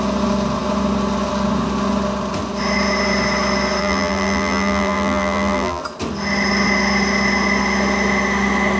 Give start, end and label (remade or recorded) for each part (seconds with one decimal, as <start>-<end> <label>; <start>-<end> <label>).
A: 0.0-3.8 recorded; 3.8-5.8 remade; 5.8-8.8 recorded